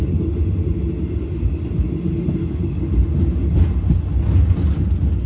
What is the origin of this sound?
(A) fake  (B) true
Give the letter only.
B